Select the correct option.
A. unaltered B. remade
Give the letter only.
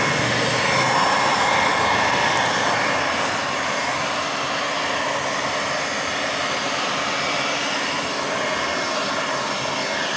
A